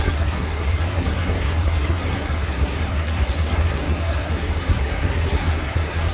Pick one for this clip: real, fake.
fake